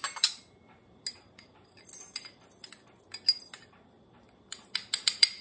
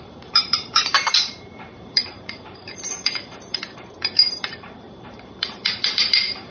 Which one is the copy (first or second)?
second